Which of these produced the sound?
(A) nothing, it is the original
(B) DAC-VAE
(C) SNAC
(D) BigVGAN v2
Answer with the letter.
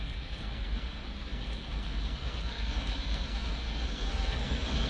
C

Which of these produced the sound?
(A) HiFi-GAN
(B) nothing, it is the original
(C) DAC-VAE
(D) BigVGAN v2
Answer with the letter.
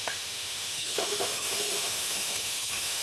C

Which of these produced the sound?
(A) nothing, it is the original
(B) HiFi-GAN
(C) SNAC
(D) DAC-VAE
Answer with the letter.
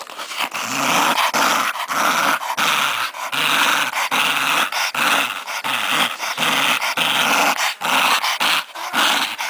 A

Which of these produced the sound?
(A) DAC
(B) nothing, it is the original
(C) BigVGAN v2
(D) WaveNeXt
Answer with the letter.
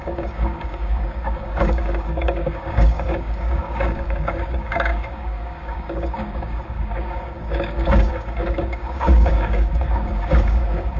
A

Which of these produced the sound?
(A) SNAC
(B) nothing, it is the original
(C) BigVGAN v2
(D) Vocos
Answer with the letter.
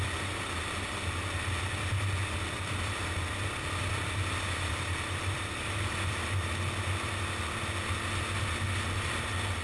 B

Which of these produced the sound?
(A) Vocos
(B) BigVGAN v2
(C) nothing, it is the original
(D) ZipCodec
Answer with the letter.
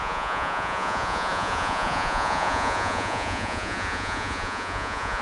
A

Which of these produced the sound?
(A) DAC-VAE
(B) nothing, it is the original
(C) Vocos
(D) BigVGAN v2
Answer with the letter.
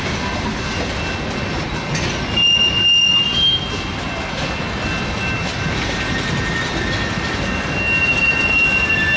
B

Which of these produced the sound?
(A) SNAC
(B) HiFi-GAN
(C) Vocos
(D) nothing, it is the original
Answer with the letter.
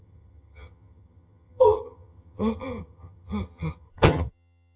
B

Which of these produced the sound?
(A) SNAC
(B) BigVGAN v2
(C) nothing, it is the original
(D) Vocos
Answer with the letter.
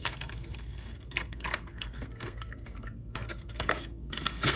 A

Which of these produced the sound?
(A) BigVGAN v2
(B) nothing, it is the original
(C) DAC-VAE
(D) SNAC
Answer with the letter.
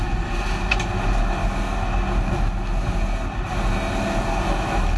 B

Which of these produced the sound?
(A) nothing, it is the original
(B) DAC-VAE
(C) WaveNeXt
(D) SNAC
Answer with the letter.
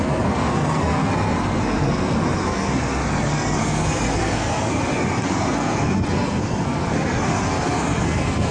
D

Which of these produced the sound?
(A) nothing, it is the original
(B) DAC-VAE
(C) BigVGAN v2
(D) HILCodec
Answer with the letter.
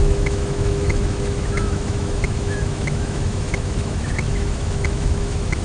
B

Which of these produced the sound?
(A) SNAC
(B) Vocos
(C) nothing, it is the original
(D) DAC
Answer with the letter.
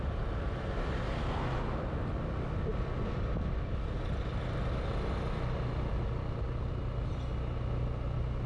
C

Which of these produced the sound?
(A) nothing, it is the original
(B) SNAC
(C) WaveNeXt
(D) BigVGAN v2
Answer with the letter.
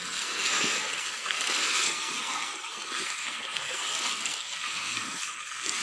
B